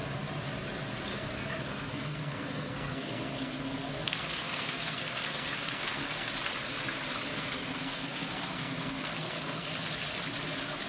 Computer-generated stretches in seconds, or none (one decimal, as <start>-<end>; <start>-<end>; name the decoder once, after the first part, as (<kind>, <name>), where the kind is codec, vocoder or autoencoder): 1.1-6.3 (codec, SNAC); 7.3-9.7